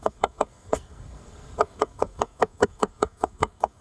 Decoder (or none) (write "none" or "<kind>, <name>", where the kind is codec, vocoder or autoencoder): codec, SNAC